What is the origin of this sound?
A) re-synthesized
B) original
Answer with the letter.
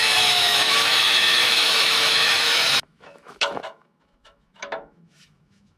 A